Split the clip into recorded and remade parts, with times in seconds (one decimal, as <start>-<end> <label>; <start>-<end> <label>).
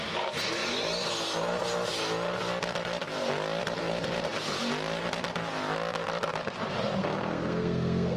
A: 0.0-7.0 recorded; 7.0-8.2 remade